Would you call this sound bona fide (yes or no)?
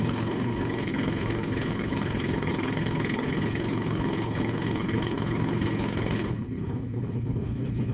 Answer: no